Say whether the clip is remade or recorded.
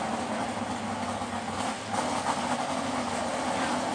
recorded